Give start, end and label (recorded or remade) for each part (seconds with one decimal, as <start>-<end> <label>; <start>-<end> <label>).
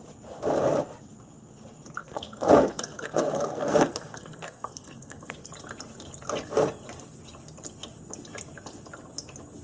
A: 0.0-2.0 recorded; 2.0-5.5 remade; 5.5-9.6 recorded